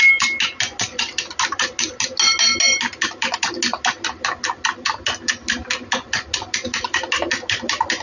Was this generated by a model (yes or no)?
no